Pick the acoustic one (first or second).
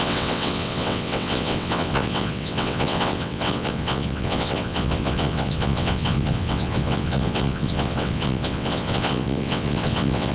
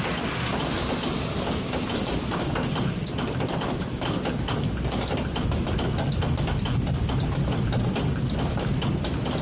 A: second